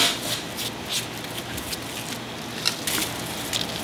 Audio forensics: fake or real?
real